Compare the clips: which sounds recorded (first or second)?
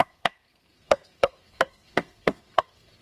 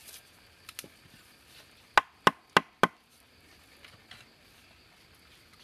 second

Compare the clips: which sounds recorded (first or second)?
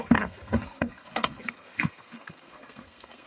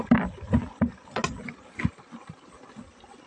second